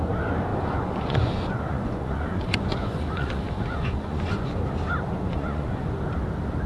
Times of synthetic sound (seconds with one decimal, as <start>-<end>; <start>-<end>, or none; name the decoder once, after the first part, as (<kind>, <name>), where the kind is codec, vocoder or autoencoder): 0.5-4.5 (vocoder, Vocos); 5.3-5.9